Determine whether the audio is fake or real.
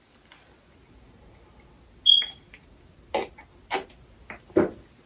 real